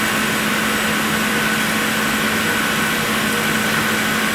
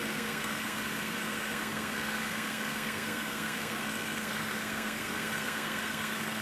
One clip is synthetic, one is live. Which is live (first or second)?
first